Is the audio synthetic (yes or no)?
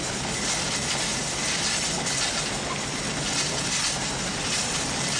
no